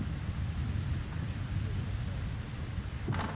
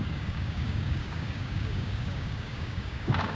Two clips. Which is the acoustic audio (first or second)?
first